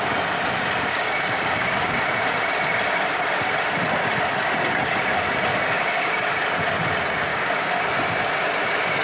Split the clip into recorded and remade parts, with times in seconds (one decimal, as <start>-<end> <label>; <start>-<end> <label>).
0.0-0.9 recorded; 0.9-2.0 remade; 2.0-5.5 recorded; 5.5-6.3 remade; 6.3-7.3 recorded; 7.3-7.9 remade; 7.9-9.0 recorded